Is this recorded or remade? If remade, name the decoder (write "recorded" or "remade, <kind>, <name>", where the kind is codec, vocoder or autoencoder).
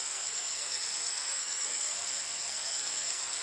remade, codec, SNAC